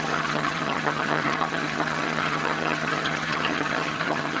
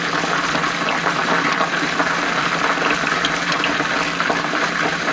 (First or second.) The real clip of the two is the second